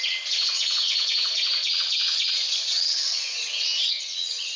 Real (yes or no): no